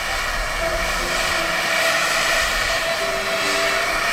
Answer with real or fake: fake